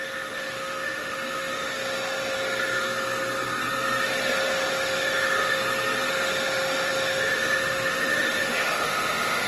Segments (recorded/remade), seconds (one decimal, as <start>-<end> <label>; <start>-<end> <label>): 0.0-1.7 remade; 1.7-4.7 recorded; 4.7-5.6 remade; 5.6-6.1 recorded; 6.1-9.5 remade